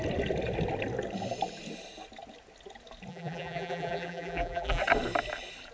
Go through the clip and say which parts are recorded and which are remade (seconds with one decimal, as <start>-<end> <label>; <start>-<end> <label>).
0.0-3.1 recorded; 3.1-4.8 remade; 4.8-5.7 recorded